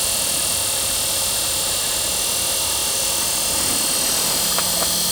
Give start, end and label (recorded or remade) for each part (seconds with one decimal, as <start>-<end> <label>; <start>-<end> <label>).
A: 0.0-5.1 recorded